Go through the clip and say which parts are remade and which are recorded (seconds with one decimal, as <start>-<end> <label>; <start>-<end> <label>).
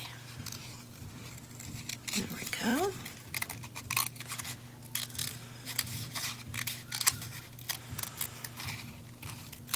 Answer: 0.0-9.8 recorded